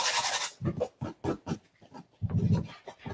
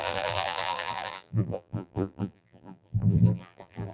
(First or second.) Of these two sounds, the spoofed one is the second